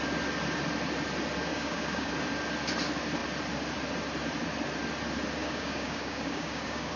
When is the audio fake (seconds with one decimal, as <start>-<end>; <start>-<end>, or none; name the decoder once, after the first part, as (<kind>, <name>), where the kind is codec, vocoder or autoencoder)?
1.5-2.1 (codec, DAC); 5.4-7.0